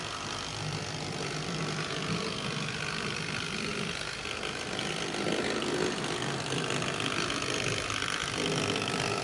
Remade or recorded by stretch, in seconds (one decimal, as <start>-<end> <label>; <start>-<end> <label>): 0.0-3.7 remade; 3.7-4.9 recorded; 4.9-9.2 remade